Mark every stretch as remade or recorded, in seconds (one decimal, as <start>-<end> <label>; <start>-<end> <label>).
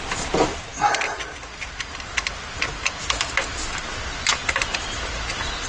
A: 0.0-5.7 recorded